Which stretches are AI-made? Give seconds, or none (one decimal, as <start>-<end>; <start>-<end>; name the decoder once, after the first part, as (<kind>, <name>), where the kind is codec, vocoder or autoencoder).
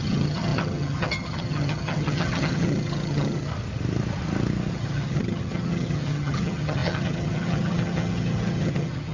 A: 0.0-3.5 (vocoder, HiFi-GAN); 4.7-9.1